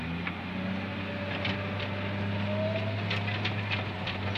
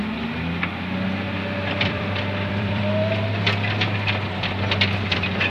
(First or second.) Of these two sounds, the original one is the first